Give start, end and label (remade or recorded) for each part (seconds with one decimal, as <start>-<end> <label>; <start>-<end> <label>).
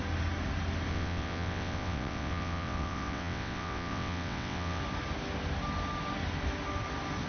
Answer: 0.0-0.9 recorded; 0.9-4.8 remade; 4.8-7.3 recorded